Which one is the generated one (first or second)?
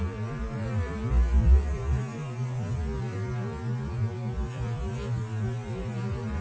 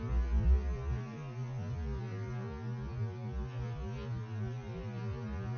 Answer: first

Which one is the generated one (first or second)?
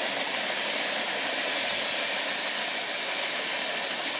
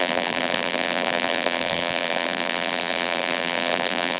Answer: second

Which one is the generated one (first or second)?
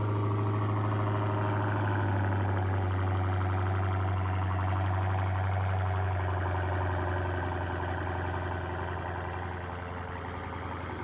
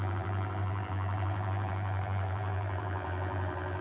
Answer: second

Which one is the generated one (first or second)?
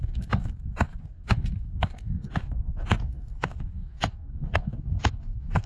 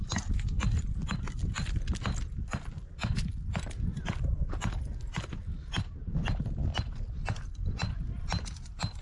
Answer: first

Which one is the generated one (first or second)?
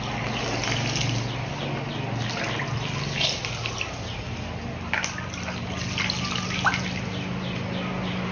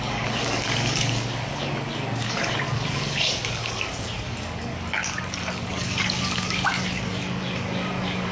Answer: second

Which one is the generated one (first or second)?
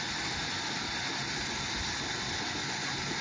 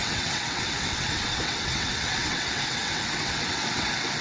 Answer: second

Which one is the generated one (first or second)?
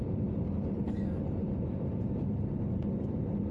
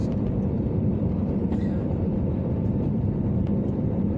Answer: second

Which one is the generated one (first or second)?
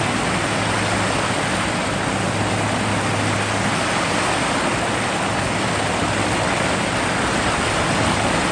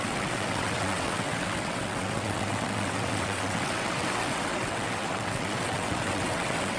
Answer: second